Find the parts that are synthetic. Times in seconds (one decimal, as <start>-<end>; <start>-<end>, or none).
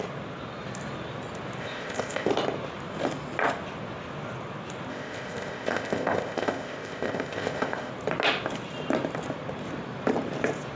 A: 1.6-2.3; 4.9-7.9